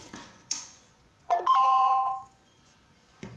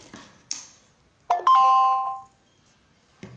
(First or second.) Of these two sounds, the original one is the second